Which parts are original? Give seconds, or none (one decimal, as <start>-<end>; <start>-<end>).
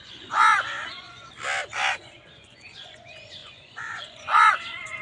1.3-1.9